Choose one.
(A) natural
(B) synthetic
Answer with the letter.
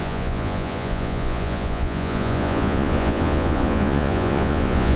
B